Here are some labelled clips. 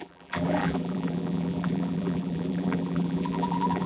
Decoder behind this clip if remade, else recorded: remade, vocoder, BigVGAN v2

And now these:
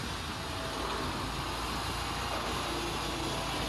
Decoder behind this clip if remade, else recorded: recorded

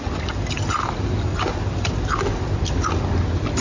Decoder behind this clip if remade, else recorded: recorded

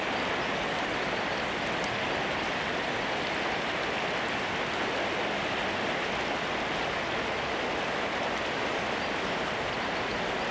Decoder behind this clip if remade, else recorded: recorded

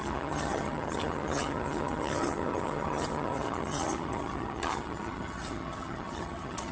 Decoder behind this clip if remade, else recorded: remade, vocoder, HiFi-GAN